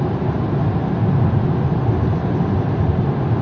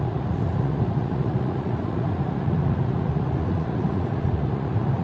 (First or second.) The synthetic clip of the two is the second